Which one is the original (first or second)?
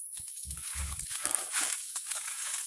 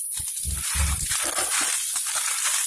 second